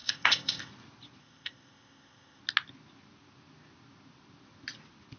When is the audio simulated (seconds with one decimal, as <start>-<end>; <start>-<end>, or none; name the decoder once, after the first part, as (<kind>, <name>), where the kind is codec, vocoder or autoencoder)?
0.0-0.7 (codec, ZipCodec); 1.2-2.4